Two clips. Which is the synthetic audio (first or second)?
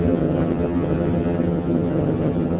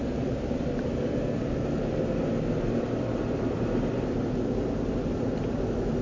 first